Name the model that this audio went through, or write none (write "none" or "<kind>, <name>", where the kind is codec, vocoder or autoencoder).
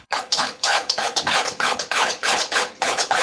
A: codec, HILCodec